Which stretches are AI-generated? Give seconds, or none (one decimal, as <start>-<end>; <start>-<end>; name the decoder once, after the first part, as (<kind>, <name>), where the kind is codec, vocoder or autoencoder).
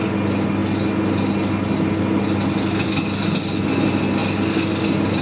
none